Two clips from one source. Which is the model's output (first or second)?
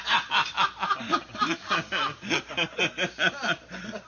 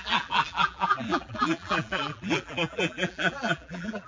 second